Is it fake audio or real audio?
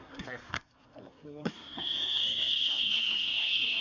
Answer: fake